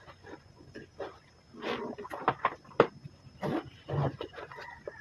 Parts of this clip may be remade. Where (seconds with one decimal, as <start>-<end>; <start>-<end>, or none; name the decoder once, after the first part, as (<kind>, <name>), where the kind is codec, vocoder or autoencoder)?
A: 0.0-0.9 (vocoder, Vocos); 3.9-5.0